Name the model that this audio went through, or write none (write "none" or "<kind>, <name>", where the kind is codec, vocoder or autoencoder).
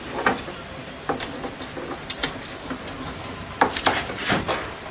none